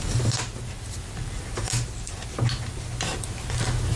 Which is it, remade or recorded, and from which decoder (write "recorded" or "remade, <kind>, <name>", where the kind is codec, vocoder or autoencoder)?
recorded